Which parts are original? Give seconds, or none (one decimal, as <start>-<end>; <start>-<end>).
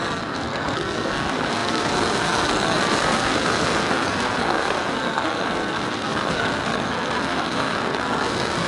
none